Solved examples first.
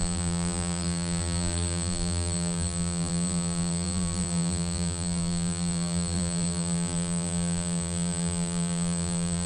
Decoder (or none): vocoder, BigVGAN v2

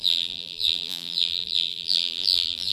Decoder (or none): vocoder, BigVGAN v2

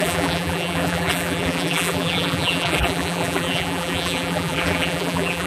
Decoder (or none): vocoder, BigVGAN v2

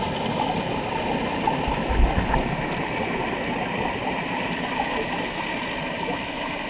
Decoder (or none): none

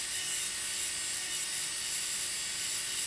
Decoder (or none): none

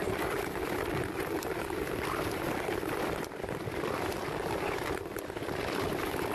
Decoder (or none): none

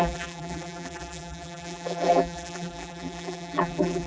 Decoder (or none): vocoder, BigVGAN v2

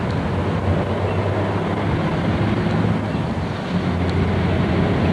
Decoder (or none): none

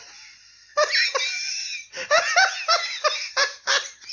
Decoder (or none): none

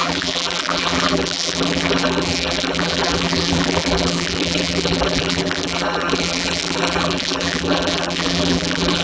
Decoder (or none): vocoder, BigVGAN v2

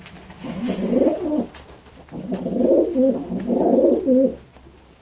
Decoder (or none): none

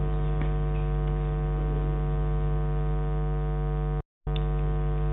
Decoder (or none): none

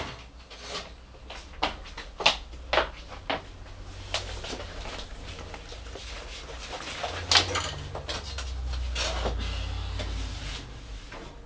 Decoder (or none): none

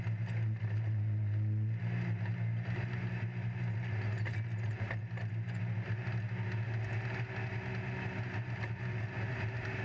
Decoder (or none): none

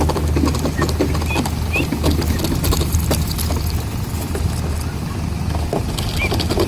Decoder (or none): none